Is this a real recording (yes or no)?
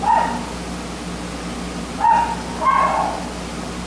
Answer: yes